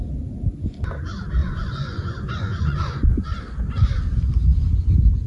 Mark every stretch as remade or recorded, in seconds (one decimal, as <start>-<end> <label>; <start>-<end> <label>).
0.0-1.4 recorded; 1.4-3.1 remade; 3.1-5.3 recorded